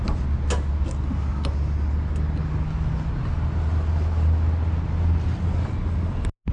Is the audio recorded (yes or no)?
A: yes